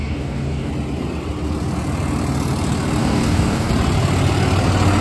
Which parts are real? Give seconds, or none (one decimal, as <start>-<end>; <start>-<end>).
0.7-3.0; 3.7-5.0